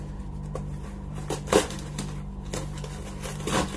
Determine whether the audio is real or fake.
real